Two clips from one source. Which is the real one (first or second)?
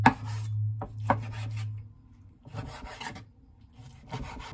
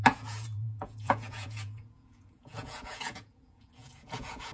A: first